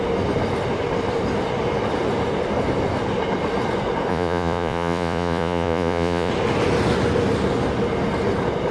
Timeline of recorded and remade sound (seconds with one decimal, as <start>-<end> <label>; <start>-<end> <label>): 0.0-4.1 recorded; 4.1-6.3 remade; 6.3-8.7 recorded